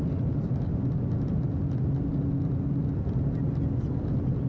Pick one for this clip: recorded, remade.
recorded